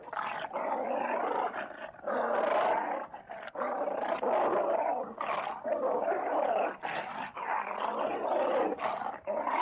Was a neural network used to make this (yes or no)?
no